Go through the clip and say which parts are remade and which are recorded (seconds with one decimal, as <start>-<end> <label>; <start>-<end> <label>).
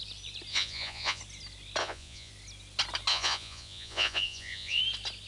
0.0-0.5 recorded; 0.5-1.2 remade; 1.2-1.8 recorded; 1.8-2.3 remade; 2.3-3.1 recorded; 3.1-4.8 remade; 4.8-5.3 recorded